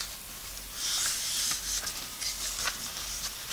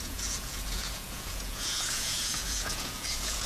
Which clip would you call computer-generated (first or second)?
second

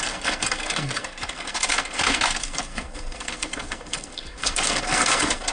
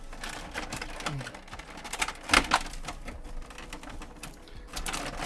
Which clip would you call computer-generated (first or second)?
first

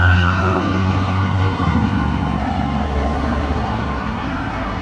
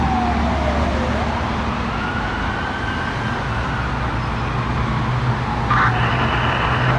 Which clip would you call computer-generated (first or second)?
first